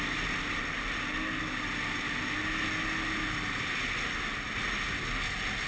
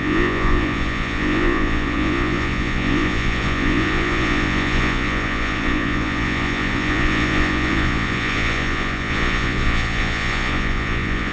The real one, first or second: first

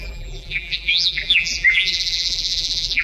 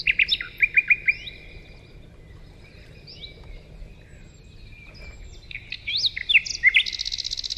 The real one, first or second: second